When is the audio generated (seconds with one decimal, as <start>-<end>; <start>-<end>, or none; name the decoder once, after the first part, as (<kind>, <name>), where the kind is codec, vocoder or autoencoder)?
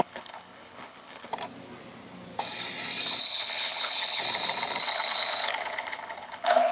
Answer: 0.0-1.3 (codec, HILCodec); 3.2-4.2; 4.8-6.7